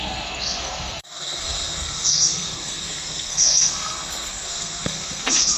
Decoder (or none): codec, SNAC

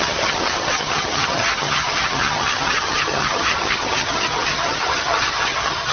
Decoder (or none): vocoder, HiFi-GAN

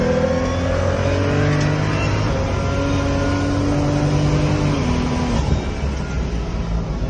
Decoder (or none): none